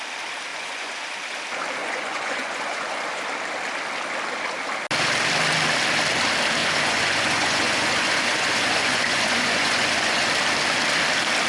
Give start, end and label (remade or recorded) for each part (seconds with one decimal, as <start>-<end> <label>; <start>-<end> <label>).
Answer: 0.0-0.5 recorded; 0.5-1.0 remade; 1.0-1.8 recorded; 1.8-3.2 remade; 3.2-6.6 recorded; 6.6-10.3 remade; 10.3-11.5 recorded